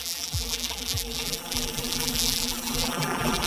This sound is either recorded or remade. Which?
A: remade